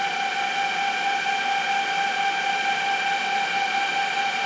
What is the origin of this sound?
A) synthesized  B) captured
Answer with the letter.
B